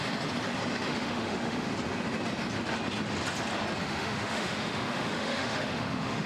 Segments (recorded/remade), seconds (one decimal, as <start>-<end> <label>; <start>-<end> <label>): 0.0-0.9 recorded; 0.9-1.7 remade; 1.7-3.8 recorded; 3.8-6.3 remade